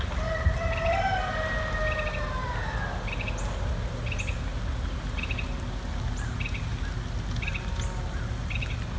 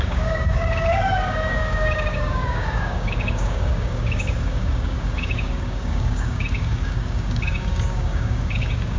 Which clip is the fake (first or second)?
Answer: second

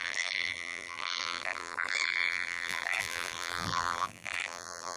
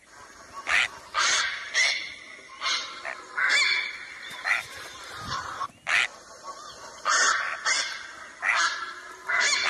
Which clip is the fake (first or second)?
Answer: first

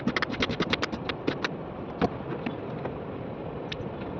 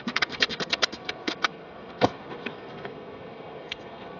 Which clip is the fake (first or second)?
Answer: second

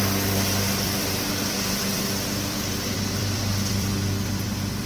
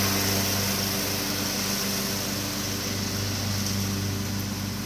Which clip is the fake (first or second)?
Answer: first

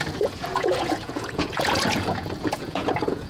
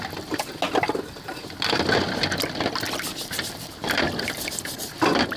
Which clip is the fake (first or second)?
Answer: first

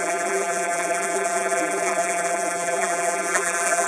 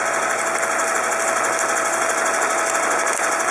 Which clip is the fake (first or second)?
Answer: first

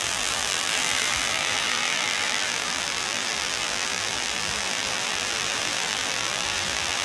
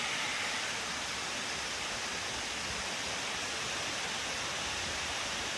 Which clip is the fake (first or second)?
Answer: first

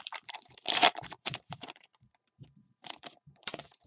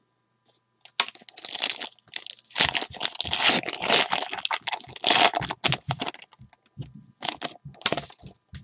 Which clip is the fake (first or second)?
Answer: first